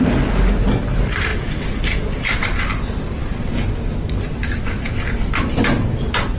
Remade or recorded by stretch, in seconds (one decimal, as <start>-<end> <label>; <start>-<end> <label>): 0.0-3.5 recorded; 3.5-4.2 remade; 4.2-6.4 recorded